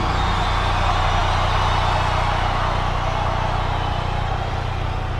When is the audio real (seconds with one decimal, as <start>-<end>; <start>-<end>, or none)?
0.0-5.2